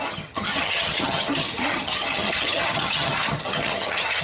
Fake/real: fake